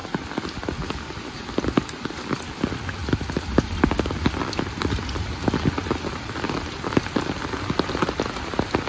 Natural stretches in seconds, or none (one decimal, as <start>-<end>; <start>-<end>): 0.0-8.9